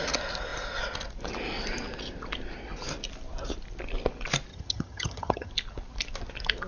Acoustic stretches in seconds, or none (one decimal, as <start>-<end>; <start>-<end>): 0.0-4.5; 5.5-6.7